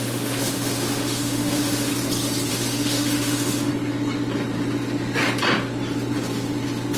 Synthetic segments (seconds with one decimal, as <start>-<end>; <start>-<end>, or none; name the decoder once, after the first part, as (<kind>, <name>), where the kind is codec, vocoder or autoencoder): 0.0-1.9 (autoencoder, DAC-VAE); 2.5-3.7